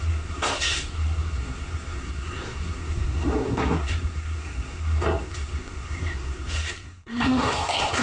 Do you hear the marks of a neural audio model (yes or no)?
yes